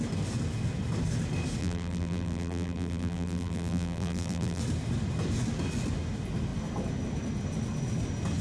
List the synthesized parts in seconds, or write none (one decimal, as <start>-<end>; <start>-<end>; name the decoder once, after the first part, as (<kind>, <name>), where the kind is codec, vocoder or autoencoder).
1.6-4.6 (vocoder, BigVGAN v2)